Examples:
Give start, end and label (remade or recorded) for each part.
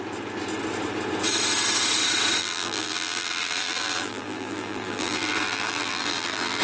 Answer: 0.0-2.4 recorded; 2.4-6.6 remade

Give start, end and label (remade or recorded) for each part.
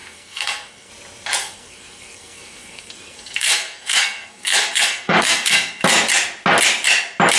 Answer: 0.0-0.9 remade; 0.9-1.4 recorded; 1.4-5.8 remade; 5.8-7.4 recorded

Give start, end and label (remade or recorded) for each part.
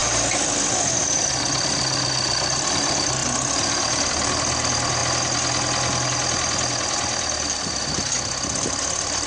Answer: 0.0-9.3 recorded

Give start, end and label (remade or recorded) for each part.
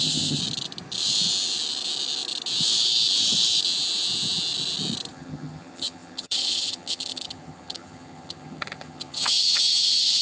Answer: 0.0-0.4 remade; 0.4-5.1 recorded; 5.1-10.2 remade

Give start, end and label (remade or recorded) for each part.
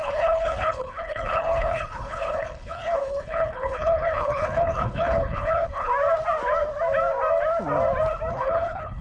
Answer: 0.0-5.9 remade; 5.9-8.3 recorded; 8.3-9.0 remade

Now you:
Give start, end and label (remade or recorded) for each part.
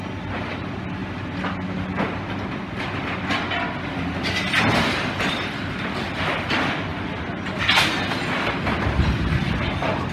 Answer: 0.0-10.1 recorded